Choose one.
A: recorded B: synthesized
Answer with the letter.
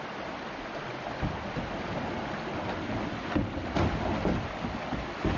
A